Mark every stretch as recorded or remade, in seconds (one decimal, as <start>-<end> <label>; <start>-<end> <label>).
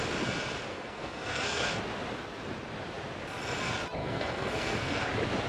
0.0-0.7 recorded; 0.7-1.7 remade; 1.7-4.0 recorded; 4.0-5.1 remade; 5.1-5.5 recorded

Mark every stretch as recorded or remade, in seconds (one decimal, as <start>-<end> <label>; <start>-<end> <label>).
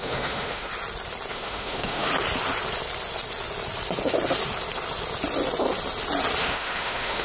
0.0-0.7 remade; 0.7-1.3 recorded; 1.3-2.1 remade; 2.1-6.4 recorded; 6.4-7.2 remade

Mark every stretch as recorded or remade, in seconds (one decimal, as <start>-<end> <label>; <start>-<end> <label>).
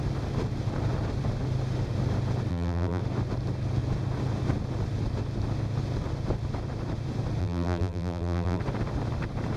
0.0-2.5 recorded; 2.5-3.0 remade; 3.0-7.4 recorded; 7.4-8.6 remade; 8.6-9.6 recorded